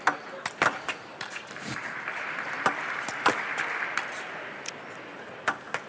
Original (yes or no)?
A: yes